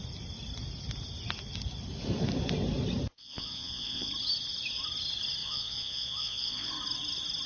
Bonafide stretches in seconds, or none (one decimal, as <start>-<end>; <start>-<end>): 0.0-3.1; 4.1-5.4; 6.7-7.5